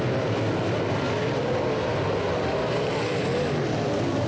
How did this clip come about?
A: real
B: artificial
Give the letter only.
A